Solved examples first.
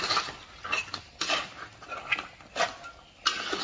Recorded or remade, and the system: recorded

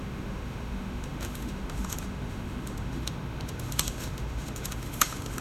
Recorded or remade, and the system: remade, autoencoder, DAC-VAE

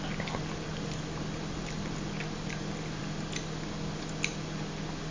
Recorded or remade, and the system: recorded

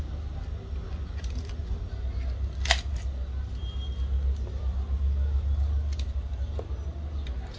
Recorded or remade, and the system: recorded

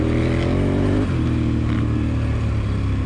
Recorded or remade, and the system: recorded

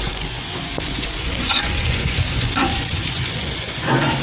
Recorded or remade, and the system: remade, vocoder, Vocos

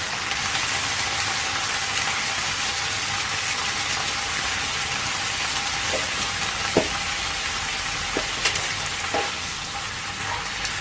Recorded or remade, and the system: recorded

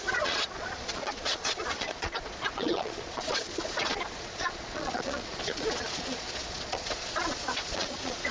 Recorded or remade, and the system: remade, vocoder, Vocos